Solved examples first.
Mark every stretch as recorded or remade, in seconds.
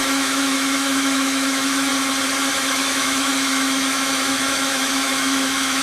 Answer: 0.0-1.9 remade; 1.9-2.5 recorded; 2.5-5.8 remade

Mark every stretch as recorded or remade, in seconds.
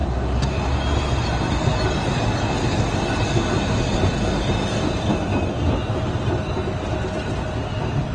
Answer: 0.0-8.1 recorded